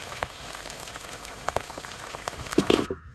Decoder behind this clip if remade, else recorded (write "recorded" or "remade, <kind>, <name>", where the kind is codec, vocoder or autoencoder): remade, autoencoder, DAC-VAE